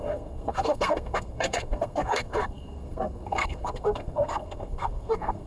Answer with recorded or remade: remade